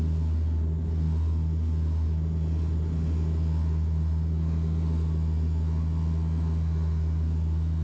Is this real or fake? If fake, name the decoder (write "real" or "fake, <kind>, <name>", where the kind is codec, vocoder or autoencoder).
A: real